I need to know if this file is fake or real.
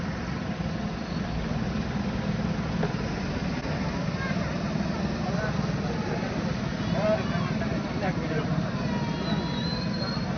real